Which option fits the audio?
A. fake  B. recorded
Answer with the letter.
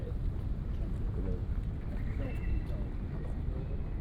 B